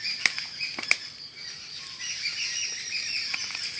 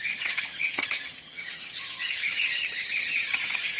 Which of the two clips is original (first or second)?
first